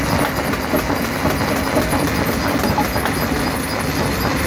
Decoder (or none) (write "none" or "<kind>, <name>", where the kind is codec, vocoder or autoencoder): none